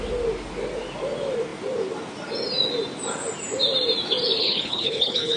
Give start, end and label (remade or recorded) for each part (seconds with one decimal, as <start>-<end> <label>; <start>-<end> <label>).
0.0-4.4 recorded; 4.4-5.4 remade